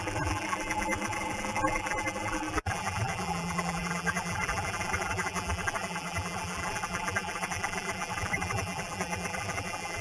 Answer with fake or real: fake